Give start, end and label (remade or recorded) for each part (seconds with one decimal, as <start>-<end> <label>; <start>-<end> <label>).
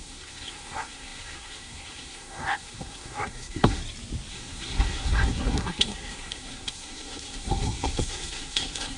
0.0-3.8 remade; 3.8-4.3 recorded; 4.3-9.0 remade